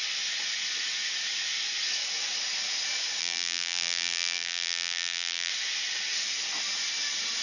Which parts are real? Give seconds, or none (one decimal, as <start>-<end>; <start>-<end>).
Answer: 0.0-3.2; 5.5-7.4